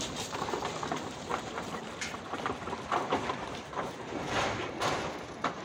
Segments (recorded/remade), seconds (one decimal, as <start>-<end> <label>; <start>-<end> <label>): 0.0-1.3 recorded; 1.3-4.7 remade; 4.7-5.6 recorded